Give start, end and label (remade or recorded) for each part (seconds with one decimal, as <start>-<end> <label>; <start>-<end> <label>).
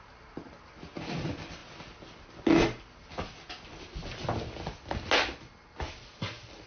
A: 0.0-6.7 recorded